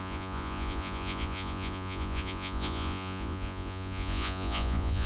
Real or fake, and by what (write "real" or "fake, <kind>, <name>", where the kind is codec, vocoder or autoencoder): fake, vocoder, Vocos